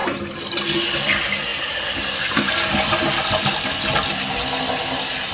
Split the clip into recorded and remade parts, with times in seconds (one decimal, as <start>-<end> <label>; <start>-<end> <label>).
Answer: 0.0-0.5 remade; 0.5-1.5 recorded; 1.5-2.7 remade; 2.7-5.3 recorded